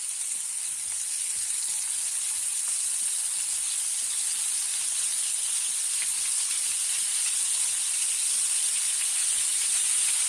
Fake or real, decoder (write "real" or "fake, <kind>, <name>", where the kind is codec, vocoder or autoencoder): real